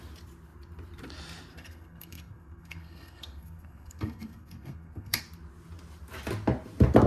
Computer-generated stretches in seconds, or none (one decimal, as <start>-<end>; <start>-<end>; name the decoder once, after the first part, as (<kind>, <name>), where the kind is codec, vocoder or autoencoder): 1.5-5.2 (codec, SNAC)